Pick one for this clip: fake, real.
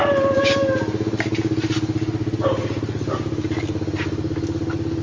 real